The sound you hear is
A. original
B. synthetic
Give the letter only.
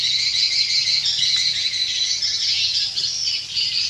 A